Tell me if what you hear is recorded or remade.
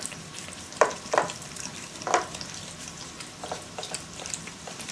remade